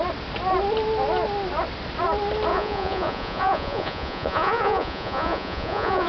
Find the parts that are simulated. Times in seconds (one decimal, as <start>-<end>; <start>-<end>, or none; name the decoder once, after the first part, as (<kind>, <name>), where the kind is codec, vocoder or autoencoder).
2.5-6.1 (vocoder, Vocos)